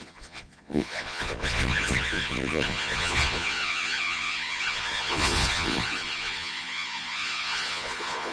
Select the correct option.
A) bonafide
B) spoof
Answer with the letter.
B